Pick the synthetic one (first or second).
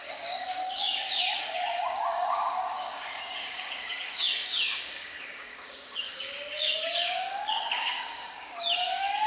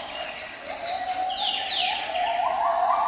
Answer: first